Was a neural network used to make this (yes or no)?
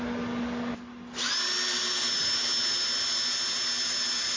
no